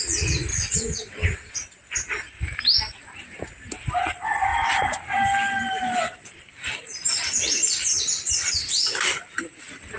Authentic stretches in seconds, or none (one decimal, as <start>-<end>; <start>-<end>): 0.0-0.5; 1.5-10.0